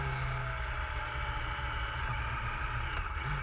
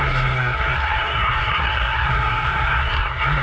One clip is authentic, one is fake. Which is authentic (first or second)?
first